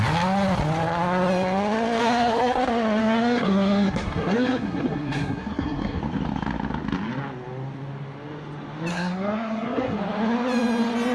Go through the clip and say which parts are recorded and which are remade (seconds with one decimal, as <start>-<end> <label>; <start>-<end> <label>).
0.0-2.0 recorded; 2.0-2.6 remade; 2.6-3.0 recorded; 3.0-6.0 remade; 6.0-8.9 recorded; 8.9-10.0 remade; 10.0-11.1 recorded